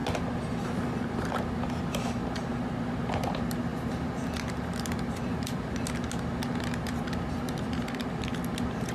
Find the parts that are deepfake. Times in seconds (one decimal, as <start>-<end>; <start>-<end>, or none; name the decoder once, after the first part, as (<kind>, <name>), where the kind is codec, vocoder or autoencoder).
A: 3.7-4.3 (vocoder, BigVGAN v2); 5.3-5.8